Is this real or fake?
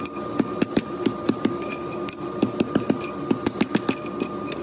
real